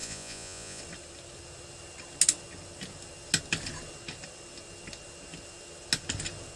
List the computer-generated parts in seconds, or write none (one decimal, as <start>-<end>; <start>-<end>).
0.0-0.8